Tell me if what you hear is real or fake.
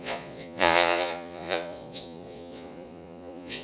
fake